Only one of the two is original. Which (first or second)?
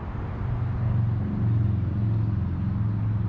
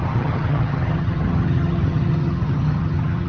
first